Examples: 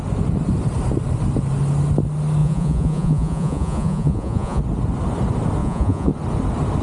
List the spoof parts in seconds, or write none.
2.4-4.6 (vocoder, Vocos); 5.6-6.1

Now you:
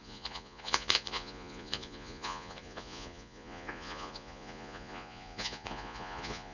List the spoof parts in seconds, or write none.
0.0-6.5 (vocoder, Vocos)

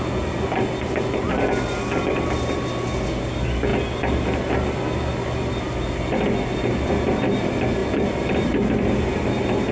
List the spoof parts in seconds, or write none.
none

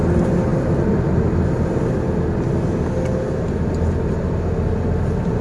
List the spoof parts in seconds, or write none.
none

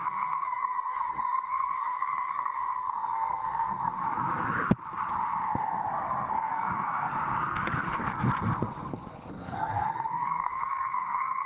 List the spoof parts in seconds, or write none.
0.0-4.0 (codec, SNAC); 6.3-7.1; 9.3-11.5

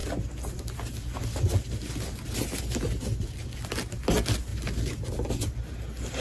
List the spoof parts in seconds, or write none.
none

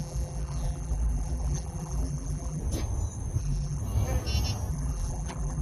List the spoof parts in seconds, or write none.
0.0-2.6 (vocoder, BigVGAN v2); 3.4-3.8; 4.7-5.6

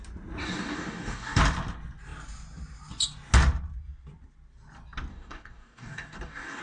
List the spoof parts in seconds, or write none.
0.4-1.4 (codec, DAC); 5.1-6.6